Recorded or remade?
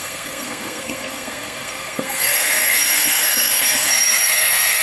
remade